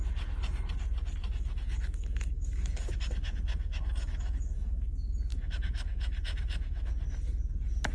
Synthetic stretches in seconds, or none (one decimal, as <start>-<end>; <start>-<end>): 1.2-4.8; 5.3-6.9